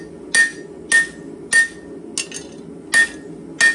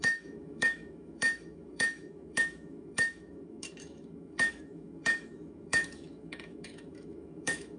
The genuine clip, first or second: first